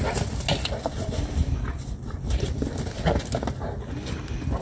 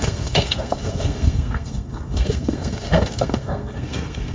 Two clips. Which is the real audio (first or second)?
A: first